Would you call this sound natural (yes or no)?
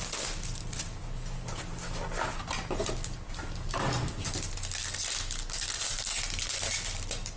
yes